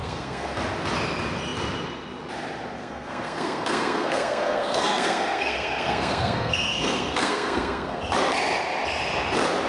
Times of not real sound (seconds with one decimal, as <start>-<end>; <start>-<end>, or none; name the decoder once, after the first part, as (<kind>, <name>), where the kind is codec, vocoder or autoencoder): 0.0-0.6 (codec, SNAC); 2.8-8.0